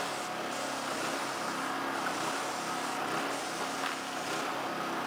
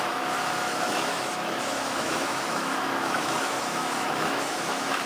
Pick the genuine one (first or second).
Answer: first